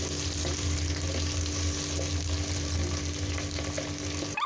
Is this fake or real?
real